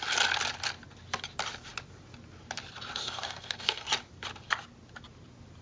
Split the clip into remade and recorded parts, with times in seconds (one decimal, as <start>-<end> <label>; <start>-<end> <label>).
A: 0.0-3.0 recorded; 3.0-3.9 remade; 3.9-5.6 recorded

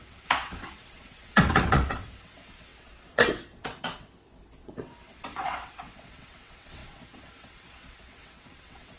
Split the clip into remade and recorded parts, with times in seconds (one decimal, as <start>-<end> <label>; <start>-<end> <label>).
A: 0.0-9.0 remade

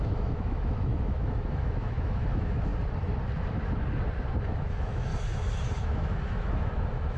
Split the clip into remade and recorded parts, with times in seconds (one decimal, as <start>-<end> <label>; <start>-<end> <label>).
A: 0.0-2.7 remade; 2.7-4.4 recorded; 4.4-5.1 remade; 5.1-5.8 recorded; 5.8-7.2 remade